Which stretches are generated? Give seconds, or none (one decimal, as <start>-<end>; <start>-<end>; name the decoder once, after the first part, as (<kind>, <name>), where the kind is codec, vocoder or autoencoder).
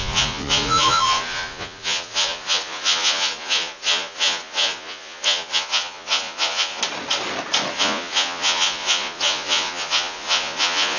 0.0-6.8 (vocoder, Vocos); 7.7-11.0